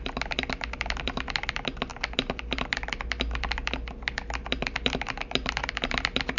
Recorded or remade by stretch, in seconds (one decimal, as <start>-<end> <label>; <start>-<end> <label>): 0.0-6.4 recorded